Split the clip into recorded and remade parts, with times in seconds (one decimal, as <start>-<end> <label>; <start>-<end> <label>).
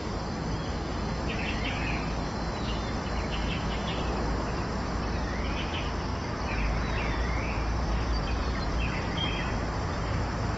0.0-6.1 recorded; 6.1-9.5 remade; 9.5-10.6 recorded